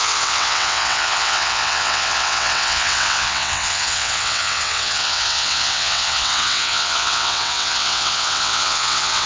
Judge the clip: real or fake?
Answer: fake